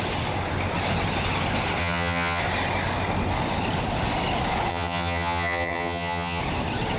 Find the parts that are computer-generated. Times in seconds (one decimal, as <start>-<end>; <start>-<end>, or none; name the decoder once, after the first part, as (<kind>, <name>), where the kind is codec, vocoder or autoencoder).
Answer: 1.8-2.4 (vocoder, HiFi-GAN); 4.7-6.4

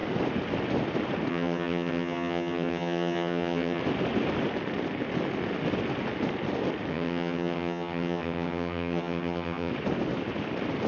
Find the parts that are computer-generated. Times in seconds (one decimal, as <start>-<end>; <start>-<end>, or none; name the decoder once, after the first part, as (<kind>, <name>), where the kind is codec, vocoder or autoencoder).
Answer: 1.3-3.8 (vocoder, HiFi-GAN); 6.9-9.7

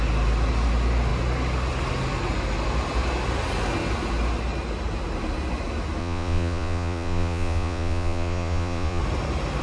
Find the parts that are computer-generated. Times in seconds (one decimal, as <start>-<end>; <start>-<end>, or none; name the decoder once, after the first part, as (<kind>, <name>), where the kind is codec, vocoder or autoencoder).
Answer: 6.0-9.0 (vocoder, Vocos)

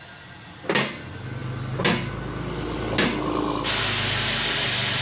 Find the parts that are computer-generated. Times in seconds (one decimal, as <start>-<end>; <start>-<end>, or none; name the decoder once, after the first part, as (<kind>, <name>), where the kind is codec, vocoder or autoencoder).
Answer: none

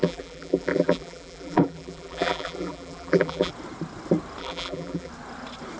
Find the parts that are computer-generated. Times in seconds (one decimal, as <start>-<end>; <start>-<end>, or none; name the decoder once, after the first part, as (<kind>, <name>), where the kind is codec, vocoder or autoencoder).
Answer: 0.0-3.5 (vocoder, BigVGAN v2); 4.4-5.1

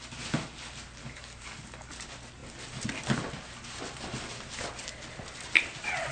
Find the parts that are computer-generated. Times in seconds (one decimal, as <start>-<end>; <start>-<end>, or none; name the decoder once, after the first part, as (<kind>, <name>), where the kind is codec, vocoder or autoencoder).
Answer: 1.0-1.9 (codec, DAC)

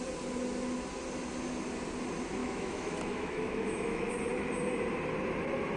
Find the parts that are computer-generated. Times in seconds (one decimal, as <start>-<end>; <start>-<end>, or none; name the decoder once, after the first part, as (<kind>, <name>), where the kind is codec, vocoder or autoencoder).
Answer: 2.4-4.1 (autoencoder, DAC-VAE)

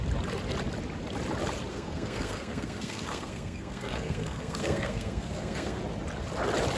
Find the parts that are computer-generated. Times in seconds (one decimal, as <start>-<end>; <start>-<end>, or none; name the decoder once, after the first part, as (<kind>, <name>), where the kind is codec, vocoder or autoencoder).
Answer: 1.7-5.8 (codec, SNAC)